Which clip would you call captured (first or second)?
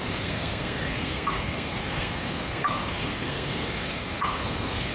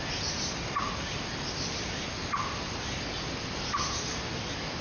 second